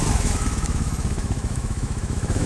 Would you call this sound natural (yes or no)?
no